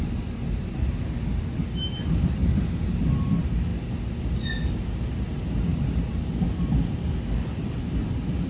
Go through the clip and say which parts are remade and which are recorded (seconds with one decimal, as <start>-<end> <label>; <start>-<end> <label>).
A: 0.0-8.5 recorded

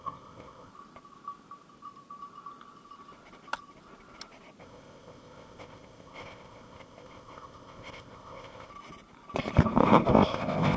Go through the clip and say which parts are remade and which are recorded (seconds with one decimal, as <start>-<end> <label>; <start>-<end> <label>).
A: 0.0-0.7 remade; 0.7-4.6 recorded; 4.6-8.7 remade; 8.7-10.1 recorded; 10.1-10.8 remade

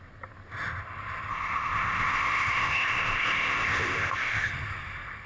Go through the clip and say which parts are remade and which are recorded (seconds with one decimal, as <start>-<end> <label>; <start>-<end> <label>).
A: 0.0-1.3 recorded; 1.3-4.5 remade; 4.5-5.3 recorded

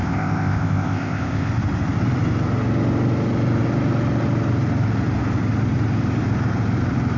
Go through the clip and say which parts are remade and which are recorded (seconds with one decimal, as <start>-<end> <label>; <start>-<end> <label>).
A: 0.0-1.5 remade; 1.5-7.2 recorded